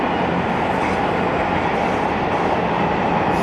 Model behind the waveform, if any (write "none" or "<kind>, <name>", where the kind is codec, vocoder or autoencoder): none